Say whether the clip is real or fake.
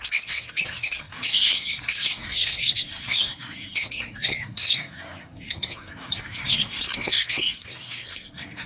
fake